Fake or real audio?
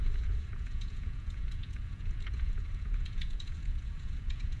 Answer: fake